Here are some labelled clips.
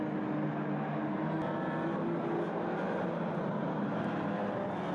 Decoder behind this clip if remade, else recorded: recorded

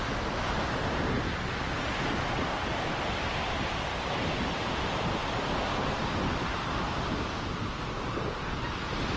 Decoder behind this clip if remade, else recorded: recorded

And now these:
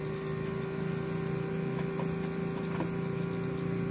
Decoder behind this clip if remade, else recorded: recorded